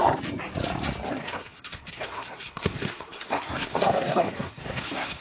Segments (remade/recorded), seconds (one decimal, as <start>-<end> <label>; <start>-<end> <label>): 0.0-1.1 recorded; 1.1-5.2 remade